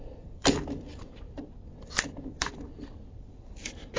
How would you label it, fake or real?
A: fake